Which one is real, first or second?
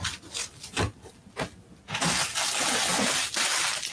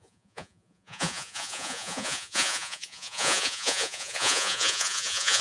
first